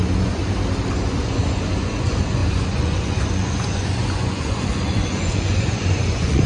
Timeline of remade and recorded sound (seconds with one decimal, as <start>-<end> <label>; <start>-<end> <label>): 0.0-0.4 remade; 0.4-0.9 recorded; 0.9-6.5 remade